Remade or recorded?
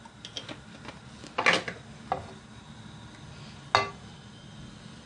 recorded